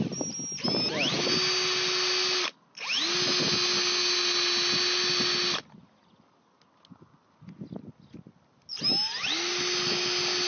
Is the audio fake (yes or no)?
no